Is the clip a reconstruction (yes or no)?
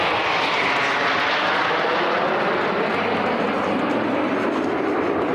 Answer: no